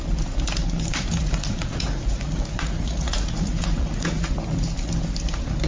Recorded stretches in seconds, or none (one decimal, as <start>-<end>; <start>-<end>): 0.0-1.2; 4.3-5.7